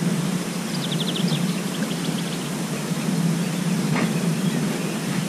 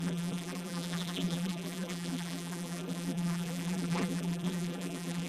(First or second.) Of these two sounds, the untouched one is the first